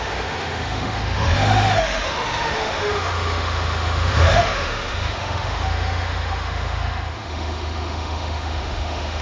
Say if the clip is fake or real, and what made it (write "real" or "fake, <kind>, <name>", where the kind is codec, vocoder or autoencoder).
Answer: fake, autoencoder, DAC-VAE